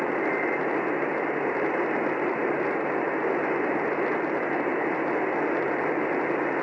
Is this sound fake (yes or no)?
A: no